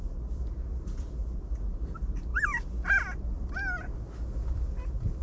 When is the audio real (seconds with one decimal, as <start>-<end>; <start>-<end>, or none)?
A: 0.0-5.2